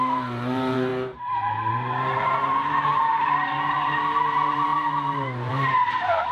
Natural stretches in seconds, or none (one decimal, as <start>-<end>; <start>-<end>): none